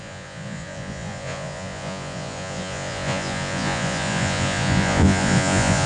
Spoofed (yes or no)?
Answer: yes